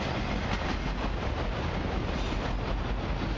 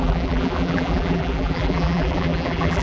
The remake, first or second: second